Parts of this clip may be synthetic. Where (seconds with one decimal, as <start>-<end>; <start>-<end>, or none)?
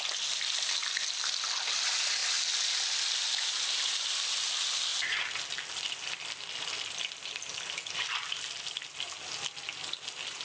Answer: none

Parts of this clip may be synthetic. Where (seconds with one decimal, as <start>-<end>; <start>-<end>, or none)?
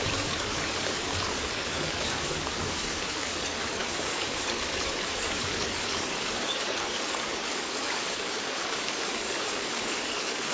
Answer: 0.0-10.5